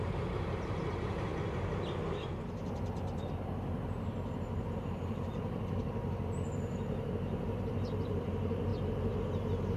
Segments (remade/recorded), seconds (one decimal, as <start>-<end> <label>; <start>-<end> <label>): 0.0-1.3 remade; 1.3-2.1 recorded; 2.1-9.8 remade